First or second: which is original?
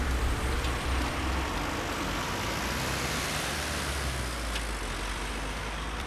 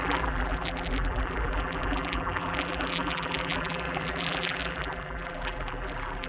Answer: first